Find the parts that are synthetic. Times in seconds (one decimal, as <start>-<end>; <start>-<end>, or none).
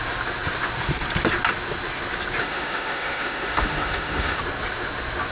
2.4-4.4